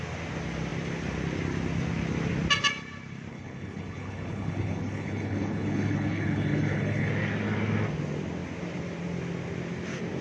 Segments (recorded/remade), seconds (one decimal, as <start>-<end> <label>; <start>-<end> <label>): 0.0-3.3 recorded; 3.3-7.1 remade; 7.1-10.2 recorded